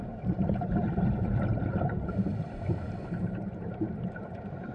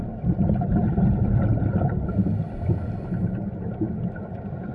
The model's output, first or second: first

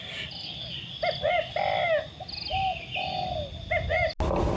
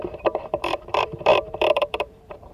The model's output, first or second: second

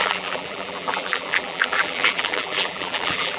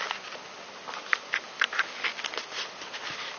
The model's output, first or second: first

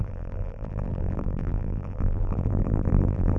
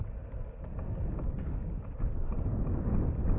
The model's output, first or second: first